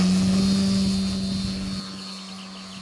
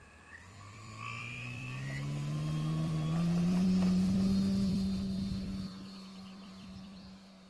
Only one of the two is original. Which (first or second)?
first